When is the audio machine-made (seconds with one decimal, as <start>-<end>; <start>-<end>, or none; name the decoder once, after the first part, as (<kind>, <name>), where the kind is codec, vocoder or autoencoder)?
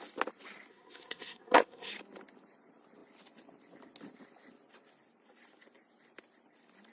0.7-1.9 (codec, SNAC)